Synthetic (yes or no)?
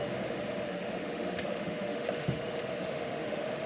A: yes